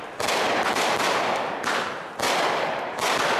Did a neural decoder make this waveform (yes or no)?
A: no